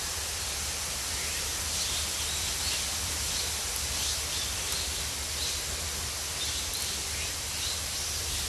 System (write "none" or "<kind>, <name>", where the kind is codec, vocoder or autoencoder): none